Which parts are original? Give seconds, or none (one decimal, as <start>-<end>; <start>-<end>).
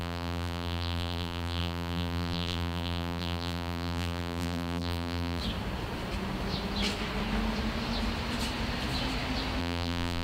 5.4-9.6